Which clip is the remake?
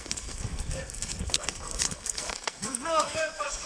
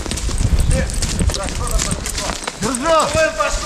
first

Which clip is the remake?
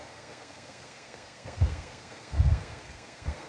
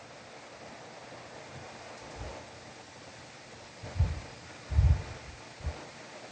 first